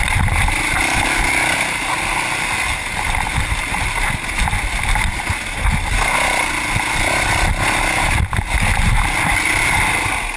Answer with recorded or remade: recorded